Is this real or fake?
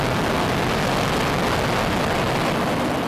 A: real